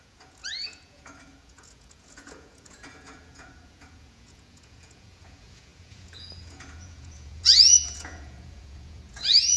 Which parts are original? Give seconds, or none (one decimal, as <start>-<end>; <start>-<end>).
none